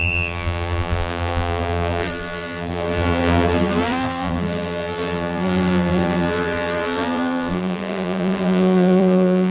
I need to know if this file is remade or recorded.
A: remade